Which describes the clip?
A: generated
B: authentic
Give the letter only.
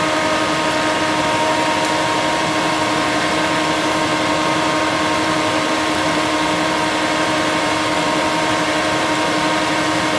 A